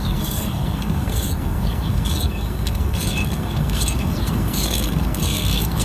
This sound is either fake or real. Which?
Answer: fake